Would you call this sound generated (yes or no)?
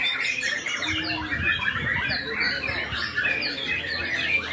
no